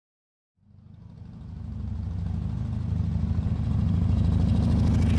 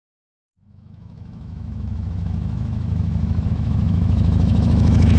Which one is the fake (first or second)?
second